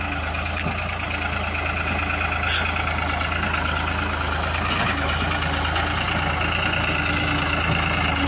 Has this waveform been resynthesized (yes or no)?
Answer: no